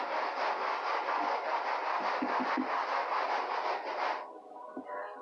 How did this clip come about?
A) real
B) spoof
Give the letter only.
A